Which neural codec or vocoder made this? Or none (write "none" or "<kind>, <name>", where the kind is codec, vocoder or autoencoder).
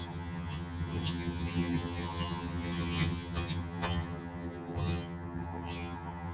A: vocoder, HiFi-GAN